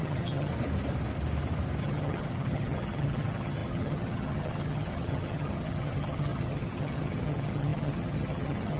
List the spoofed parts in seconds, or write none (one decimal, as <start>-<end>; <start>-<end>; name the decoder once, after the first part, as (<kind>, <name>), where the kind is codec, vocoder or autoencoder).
0.0-0.5 (vocoder, HiFi-GAN); 1.8-8.8